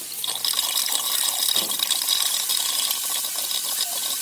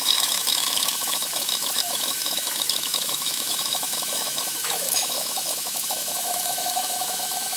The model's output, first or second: second